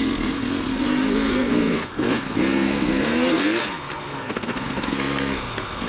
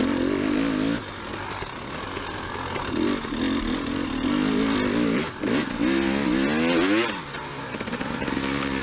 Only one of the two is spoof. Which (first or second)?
first